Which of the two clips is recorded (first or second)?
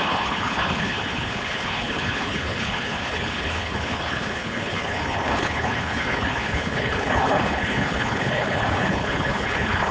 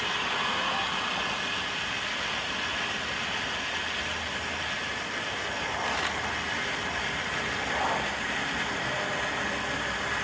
second